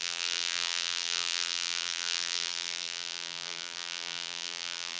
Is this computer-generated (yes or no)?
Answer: yes